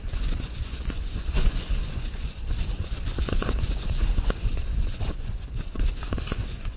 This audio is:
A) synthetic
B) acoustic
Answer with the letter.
A